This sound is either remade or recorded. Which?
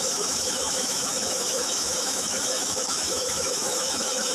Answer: remade